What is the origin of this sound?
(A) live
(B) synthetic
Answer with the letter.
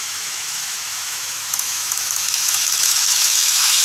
B